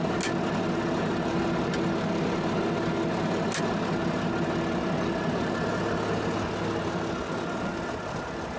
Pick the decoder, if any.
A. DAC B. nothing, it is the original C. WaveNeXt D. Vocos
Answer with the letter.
B